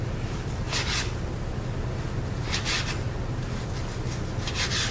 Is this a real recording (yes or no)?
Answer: yes